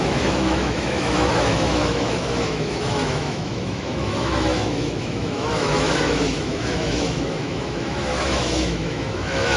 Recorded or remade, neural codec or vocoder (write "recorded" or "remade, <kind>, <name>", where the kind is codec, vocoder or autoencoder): remade, autoencoder, DAC-VAE